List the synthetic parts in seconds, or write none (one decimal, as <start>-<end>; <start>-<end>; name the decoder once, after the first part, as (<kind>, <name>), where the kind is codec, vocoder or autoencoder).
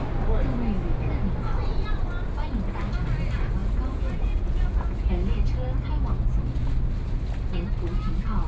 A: 3.6-5.1 (vocoder, Vocos)